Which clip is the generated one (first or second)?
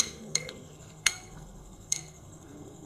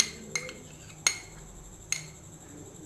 first